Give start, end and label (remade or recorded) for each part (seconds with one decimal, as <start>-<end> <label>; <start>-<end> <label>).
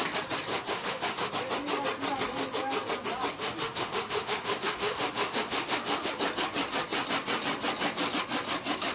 0.0-0.5 recorded; 0.5-1.3 remade; 1.3-3.4 recorded; 3.4-6.1 remade; 6.1-8.9 recorded